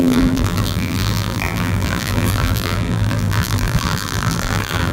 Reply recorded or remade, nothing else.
remade